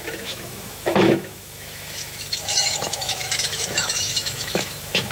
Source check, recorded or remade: remade